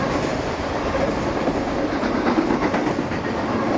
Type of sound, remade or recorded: recorded